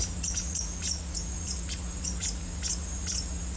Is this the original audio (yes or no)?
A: no